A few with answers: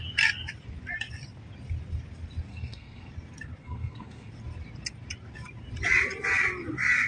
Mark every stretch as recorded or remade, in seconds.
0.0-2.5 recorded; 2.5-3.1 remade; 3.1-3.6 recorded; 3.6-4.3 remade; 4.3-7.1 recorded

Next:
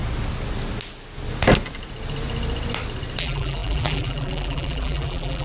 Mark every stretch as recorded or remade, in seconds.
0.0-3.2 recorded; 3.2-5.4 remade

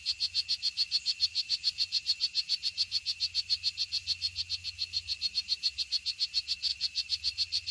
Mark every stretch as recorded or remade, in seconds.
0.0-1.3 recorded; 1.3-3.0 remade; 3.0-6.7 recorded; 6.7-7.7 remade

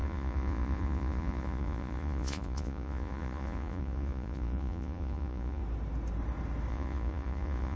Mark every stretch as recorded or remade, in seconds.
0.0-5.6 remade; 5.6-6.7 recorded; 6.7-7.8 remade

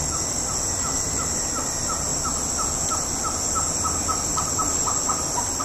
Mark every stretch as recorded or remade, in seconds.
0.0-5.6 recorded

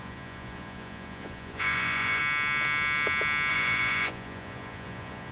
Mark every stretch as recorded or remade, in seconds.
0.0-2.2 remade; 2.2-3.5 recorded; 3.5-5.3 remade